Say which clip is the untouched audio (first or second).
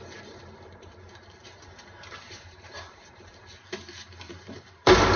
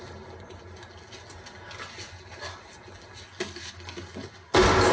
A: second